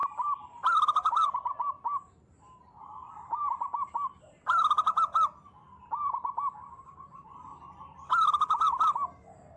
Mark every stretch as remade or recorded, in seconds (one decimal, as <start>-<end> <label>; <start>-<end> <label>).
0.0-9.6 remade